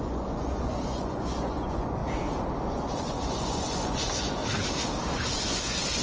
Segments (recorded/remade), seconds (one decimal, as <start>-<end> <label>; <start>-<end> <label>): 0.0-2.0 remade; 2.0-2.7 recorded; 2.7-4.4 remade; 4.4-5.1 recorded; 5.1-6.0 remade